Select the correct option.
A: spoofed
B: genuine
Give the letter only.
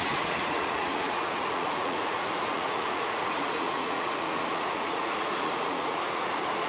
A